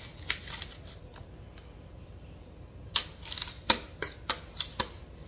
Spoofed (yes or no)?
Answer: no